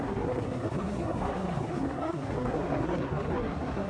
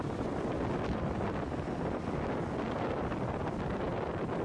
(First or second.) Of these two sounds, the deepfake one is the first